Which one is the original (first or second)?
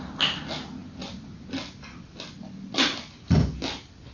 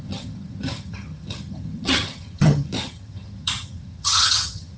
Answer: first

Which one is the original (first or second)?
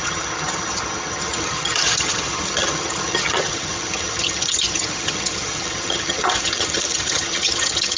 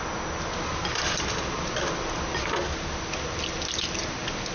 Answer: second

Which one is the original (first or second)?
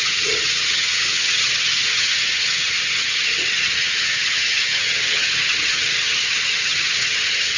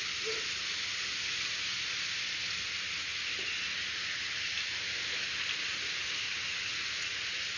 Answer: second